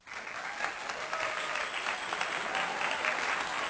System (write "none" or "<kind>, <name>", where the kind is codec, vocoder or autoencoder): none